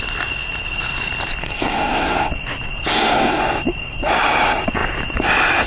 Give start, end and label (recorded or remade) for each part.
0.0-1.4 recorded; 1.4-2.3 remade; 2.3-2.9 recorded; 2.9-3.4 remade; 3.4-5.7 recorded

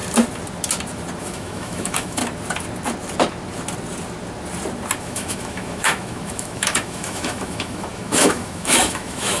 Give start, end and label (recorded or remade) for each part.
0.0-1.2 recorded; 1.2-2.2 remade; 2.2-5.0 recorded; 5.0-9.4 remade

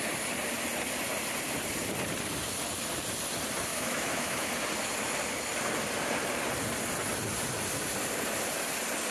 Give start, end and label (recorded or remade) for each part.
0.0-3.7 recorded; 3.7-4.5 remade; 4.5-9.1 recorded